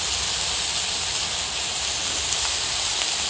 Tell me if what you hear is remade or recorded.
recorded